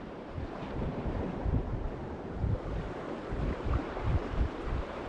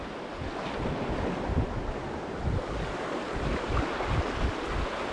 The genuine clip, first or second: second